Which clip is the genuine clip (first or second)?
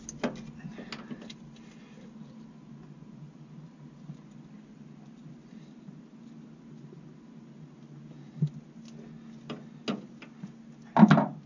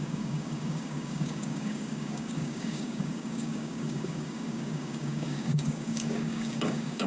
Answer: first